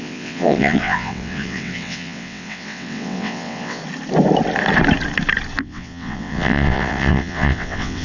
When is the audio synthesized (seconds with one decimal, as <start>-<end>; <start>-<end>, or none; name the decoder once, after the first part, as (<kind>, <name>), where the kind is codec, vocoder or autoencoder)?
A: 0.0-3.8 (vocoder, WaveNeXt); 5.6-8.0